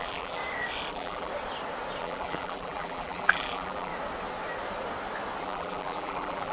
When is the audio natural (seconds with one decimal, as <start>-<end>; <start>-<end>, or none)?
0.4-0.9; 1.3-2.0; 3.9-5.4